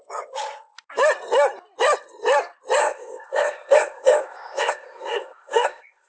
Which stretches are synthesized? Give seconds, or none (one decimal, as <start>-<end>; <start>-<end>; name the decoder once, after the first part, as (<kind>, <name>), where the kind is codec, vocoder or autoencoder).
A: 2.8-6.1 (codec, ZipCodec)